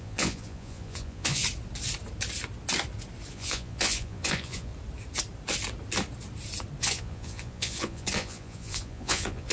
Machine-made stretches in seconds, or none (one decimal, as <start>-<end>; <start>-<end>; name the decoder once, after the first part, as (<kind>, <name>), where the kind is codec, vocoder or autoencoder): 0.0-1.4 (vocoder, Vocos); 3.3-4.7; 6.8-9.5